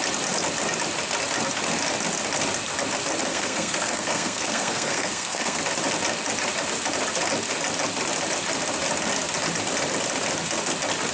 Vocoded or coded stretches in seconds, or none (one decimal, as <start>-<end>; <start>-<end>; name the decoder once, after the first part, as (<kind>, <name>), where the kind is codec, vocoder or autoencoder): 3.3-5.6 (codec, SNAC)